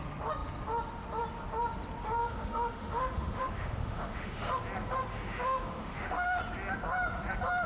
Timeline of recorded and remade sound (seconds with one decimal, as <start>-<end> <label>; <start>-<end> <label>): 0.0-2.2 recorded; 2.2-4.5 remade; 4.5-5.1 recorded; 5.1-6.4 remade; 6.4-7.7 recorded